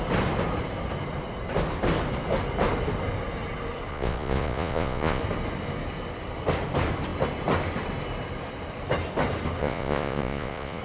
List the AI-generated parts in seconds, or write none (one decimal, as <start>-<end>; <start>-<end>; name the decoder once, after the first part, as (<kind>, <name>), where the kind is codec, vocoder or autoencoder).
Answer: 3.9-5.2 (vocoder, Vocos); 9.6-10.8